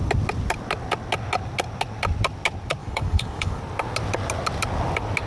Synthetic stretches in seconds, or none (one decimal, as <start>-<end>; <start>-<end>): 2.8-3.6